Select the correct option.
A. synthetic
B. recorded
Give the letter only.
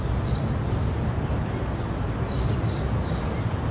B